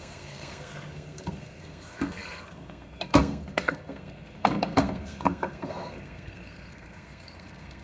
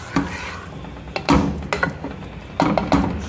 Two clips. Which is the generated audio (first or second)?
first